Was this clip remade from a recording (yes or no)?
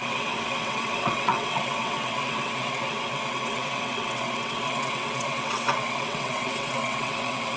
yes